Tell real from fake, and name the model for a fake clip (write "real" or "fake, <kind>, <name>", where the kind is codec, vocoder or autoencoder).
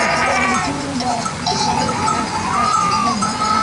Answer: fake, vocoder, Vocos